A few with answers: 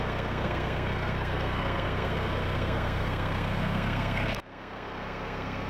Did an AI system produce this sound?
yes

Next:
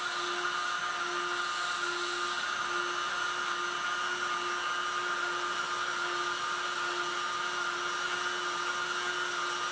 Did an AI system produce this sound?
no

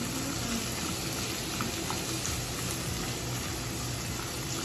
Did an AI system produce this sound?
no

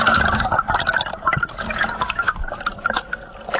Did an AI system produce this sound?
no